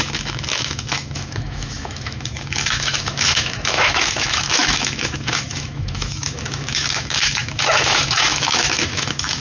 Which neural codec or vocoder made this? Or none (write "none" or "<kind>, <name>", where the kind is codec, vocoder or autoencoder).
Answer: autoencoder, DAC-VAE